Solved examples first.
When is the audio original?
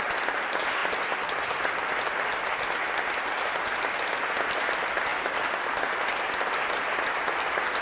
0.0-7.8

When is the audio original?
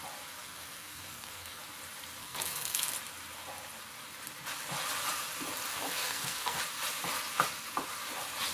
0.0-0.4; 1.6-2.2; 2.9-5.7; 6.6-8.5